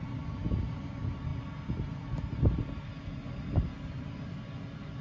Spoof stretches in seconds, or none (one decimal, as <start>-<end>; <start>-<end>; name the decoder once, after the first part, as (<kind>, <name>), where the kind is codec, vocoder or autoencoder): none